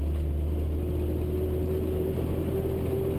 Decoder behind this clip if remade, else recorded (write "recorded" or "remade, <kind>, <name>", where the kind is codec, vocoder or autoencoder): recorded